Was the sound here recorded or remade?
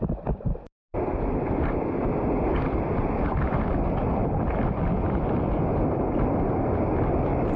recorded